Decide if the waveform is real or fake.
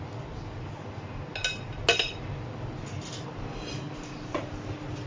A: real